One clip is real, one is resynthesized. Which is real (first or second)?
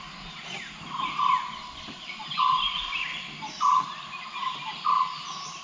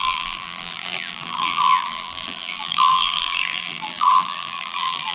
first